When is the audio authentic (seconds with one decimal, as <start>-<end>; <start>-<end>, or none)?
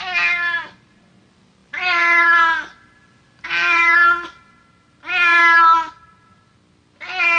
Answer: 0.0-1.6; 4.4-7.4